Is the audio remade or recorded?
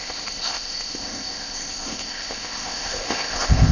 remade